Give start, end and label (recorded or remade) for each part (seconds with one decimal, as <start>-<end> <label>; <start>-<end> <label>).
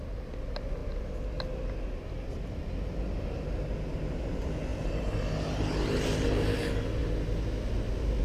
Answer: 0.0-8.2 recorded